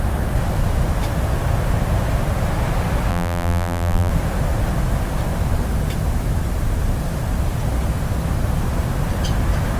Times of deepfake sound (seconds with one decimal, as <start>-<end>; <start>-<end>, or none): 3.1-4.1